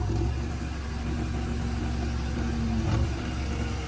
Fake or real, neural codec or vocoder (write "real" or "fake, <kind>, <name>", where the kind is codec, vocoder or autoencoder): real